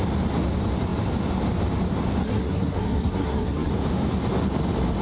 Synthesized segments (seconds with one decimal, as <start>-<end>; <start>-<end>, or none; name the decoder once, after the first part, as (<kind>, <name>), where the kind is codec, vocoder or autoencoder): 2.2-3.7 (codec, SNAC)